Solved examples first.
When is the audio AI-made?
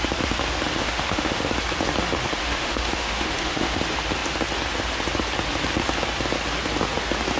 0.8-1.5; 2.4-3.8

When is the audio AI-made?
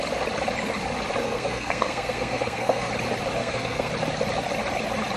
1.2-2.9; 3.4-3.9